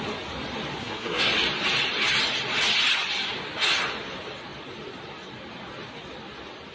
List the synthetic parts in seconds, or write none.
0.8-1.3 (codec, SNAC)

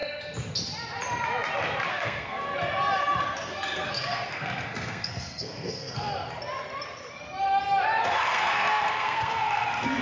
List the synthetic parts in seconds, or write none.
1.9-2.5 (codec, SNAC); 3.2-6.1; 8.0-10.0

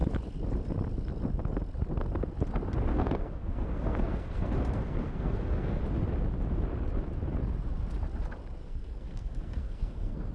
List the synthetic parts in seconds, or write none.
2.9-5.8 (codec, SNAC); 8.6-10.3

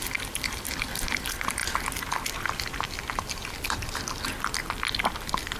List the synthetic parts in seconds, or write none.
none

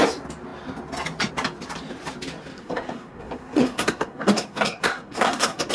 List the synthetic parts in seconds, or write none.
2.5-5.7 (codec, SNAC)

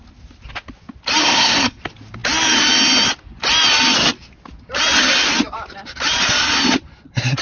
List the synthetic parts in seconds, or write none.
1.2-1.8 (codec, SNAC)